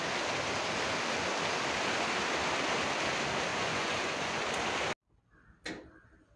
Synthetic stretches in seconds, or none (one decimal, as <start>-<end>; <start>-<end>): 3.5-4.4